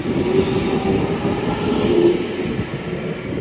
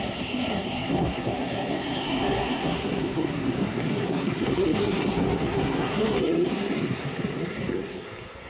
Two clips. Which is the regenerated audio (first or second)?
second